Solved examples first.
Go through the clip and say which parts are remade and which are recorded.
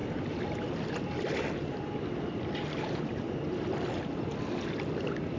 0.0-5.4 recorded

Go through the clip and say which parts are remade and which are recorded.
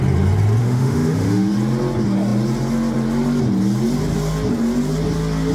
0.0-0.6 recorded; 0.6-1.5 remade; 1.5-5.5 recorded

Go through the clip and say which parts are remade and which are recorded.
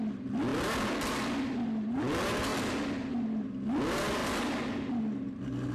0.0-5.7 recorded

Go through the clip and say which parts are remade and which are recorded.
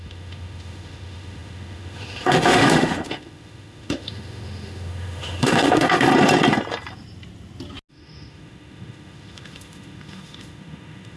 0.0-6.1 remade; 6.1-7.9 recorded; 7.9-11.2 remade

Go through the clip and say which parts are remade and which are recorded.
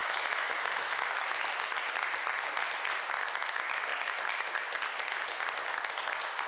0.0-1.4 remade; 1.4-6.5 recorded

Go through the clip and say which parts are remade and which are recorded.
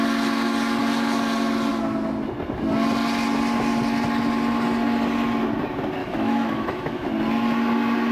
0.0-6.0 recorded; 6.0-7.1 remade; 7.1-8.1 recorded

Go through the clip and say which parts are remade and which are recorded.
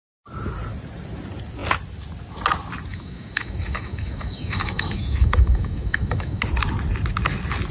0.0-2.9 recorded; 2.9-6.4 remade; 6.4-7.7 recorded